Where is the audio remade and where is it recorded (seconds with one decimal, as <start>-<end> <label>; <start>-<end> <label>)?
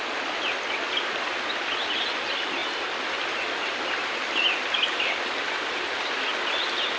0.0-7.0 recorded